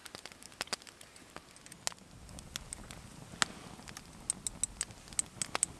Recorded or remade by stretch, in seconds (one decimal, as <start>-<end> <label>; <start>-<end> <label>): 0.0-5.8 recorded